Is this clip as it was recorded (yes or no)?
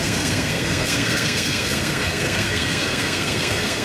no